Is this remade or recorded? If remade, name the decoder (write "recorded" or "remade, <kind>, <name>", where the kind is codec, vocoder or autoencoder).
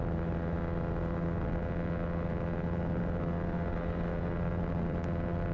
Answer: recorded